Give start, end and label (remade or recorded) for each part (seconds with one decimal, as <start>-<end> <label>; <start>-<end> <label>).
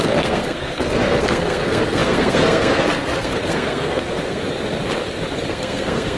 0.0-4.4 remade; 4.4-5.5 recorded; 5.5-6.2 remade